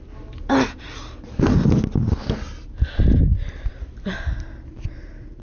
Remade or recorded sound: recorded